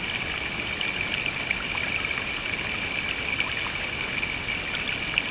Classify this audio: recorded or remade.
recorded